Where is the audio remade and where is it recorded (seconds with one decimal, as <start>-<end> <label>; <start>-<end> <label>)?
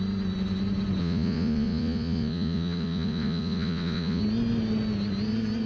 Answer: 0.0-1.0 recorded; 1.0-4.2 remade; 4.2-5.7 recorded